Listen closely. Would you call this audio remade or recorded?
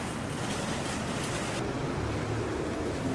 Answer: recorded